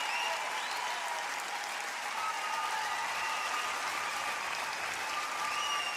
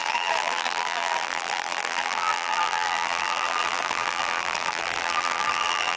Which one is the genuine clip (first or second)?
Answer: first